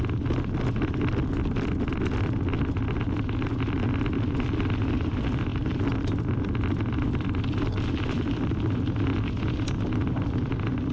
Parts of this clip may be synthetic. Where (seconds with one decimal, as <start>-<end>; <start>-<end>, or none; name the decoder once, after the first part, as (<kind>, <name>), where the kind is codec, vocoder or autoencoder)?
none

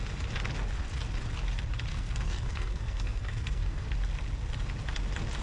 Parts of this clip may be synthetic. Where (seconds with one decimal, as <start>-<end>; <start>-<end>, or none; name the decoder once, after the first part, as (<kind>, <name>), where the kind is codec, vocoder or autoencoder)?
1.9-3.9 (codec, SNAC)

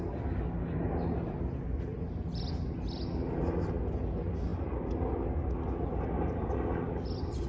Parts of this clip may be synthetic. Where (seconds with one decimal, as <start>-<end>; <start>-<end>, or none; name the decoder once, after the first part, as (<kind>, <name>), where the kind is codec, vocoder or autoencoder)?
none

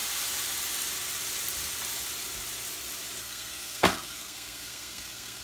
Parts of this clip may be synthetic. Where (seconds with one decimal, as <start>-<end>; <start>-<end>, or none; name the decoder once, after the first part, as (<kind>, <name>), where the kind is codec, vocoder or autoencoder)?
3.2-5.4 (codec, SNAC)

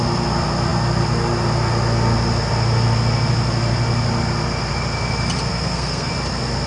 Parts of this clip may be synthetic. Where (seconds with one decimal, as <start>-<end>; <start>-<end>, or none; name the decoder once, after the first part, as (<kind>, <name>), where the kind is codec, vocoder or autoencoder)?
5.5-6.1 (codec, SNAC)

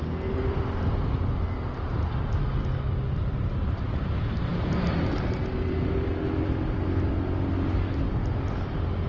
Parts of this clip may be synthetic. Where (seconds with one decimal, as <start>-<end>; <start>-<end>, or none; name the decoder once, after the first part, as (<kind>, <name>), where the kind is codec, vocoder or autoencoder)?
none

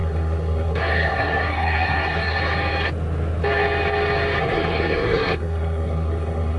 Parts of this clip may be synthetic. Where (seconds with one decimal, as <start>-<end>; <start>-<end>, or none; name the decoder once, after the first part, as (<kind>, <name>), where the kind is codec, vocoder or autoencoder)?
0.0-2.4 (codec, SNAC); 4.4-6.6

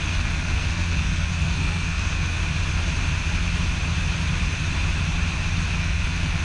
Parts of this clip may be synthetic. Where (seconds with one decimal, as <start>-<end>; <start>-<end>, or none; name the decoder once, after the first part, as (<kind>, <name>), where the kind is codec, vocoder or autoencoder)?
0.0-2.4 (codec, SNAC); 5.7-6.4